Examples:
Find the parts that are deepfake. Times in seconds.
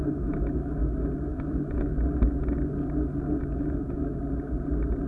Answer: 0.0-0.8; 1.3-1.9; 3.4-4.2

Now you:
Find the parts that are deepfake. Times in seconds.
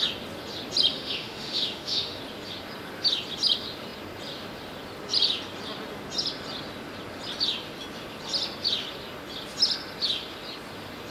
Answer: 0.9-2.2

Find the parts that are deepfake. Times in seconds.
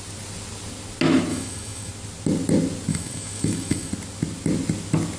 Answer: 1.3-1.9; 2.9-3.9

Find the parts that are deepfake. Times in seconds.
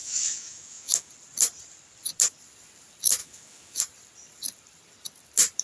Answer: 0.0-1.1; 3.2-3.8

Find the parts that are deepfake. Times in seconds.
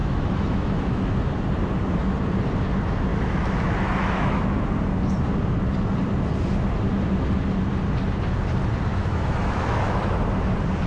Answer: 0.0-1.1; 3.1-4.7; 8.9-10.0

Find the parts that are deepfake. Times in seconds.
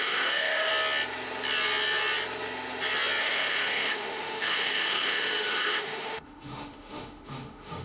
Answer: 0.0-0.7; 3.2-7.8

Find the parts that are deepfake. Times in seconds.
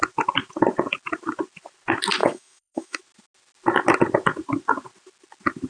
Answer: 2.2-3.0